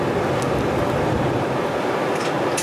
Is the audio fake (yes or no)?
no